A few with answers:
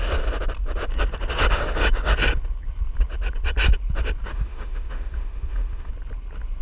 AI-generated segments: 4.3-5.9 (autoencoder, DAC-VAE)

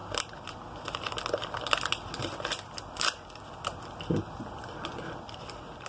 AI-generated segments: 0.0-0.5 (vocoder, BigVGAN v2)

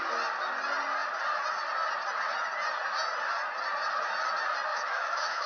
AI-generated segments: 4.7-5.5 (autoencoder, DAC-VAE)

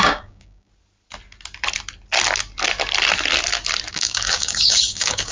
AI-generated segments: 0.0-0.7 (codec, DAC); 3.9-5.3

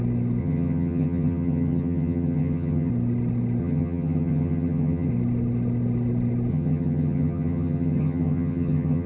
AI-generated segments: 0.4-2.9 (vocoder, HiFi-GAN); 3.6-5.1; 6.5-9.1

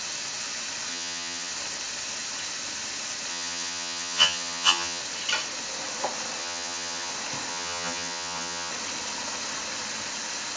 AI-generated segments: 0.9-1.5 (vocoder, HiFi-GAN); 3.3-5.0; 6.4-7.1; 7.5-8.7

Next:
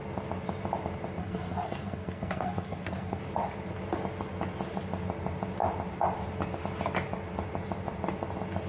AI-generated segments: 1.2-3.2 (codec, SNAC)